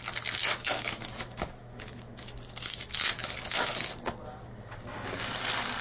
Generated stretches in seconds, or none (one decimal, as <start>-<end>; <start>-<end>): 0.4-3.9